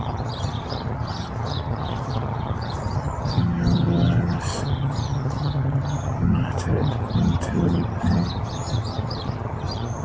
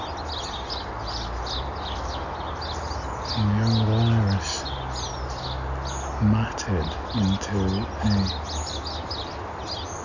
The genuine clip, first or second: second